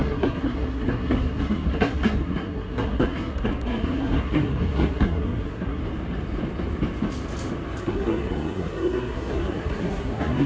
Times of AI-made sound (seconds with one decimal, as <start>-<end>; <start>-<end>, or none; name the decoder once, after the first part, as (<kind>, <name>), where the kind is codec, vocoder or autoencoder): 0.0-5.8 (codec, SNAC); 7.8-10.5